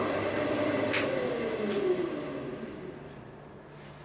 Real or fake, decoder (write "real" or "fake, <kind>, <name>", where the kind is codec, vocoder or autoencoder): real